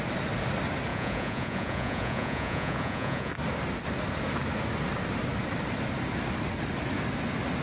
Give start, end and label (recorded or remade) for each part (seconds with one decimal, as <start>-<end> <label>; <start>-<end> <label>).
0.0-0.9 recorded; 0.9-3.3 remade; 3.3-7.6 recorded